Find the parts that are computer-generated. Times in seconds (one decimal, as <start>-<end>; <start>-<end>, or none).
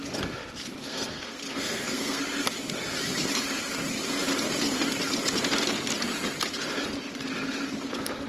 0.8-2.2